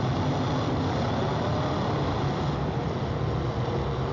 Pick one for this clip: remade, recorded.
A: recorded